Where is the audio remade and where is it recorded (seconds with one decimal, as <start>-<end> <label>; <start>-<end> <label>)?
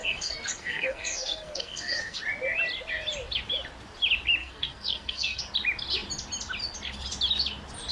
0.0-2.2 remade; 2.2-4.4 recorded; 4.4-5.4 remade; 5.4-7.9 recorded